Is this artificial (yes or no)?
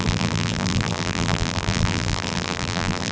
yes